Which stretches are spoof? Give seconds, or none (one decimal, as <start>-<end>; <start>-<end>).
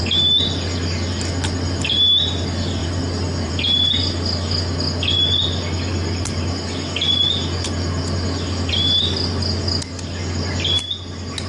2.8-3.5